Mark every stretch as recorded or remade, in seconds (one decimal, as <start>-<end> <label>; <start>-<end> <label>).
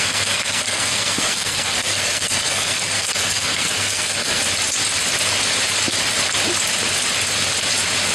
0.0-4.4 remade; 4.4-8.1 recorded